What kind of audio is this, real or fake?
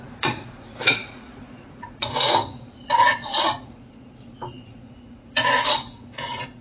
fake